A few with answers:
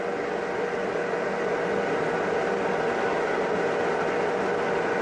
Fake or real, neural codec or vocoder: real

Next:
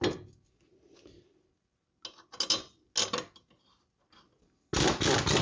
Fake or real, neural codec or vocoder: real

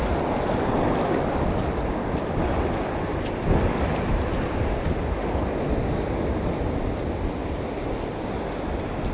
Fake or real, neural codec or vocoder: real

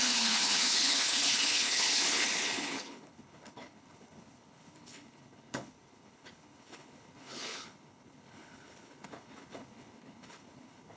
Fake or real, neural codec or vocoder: fake, codec, HILCodec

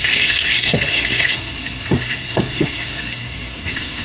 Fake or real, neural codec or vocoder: fake, codec, SNAC